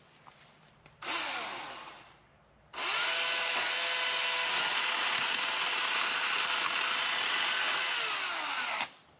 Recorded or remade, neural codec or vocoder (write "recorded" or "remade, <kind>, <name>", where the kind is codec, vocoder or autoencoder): recorded